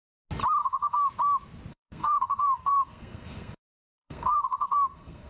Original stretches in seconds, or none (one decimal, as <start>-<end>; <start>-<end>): 0.0-0.6; 1.1-1.7